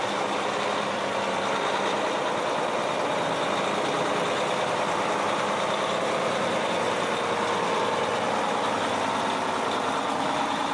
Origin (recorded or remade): recorded